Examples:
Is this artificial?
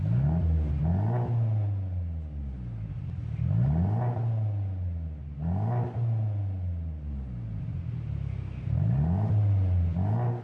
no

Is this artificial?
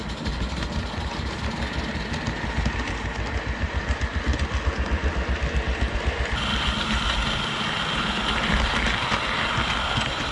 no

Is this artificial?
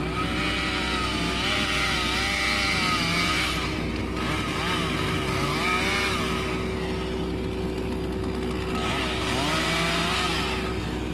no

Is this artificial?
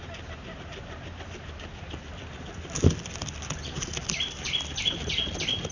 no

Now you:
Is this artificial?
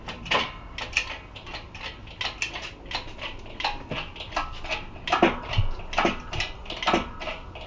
no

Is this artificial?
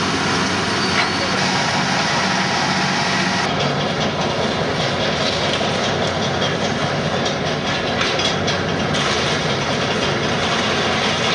no